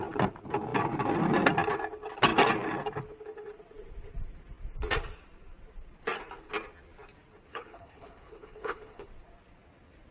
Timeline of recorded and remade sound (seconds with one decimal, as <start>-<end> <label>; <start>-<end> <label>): 0.0-7.5 recorded; 7.5-9.1 remade; 9.1-10.1 recorded